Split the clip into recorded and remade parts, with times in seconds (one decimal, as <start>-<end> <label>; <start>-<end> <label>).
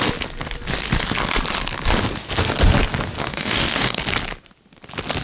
0.0-3.2 recorded; 3.2-4.0 remade; 4.0-5.2 recorded